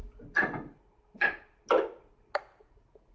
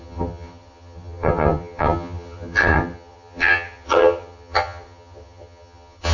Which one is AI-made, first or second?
second